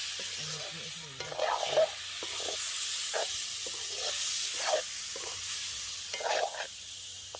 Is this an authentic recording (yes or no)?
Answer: yes